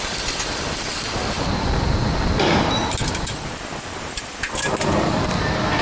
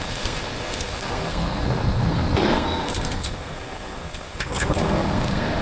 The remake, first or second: second